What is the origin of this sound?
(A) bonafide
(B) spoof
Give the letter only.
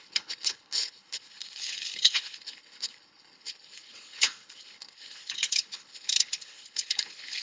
B